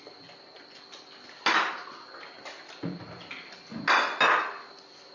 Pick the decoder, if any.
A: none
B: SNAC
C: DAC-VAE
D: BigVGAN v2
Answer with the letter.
A